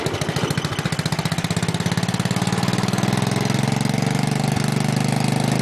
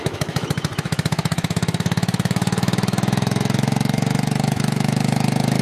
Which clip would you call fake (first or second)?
second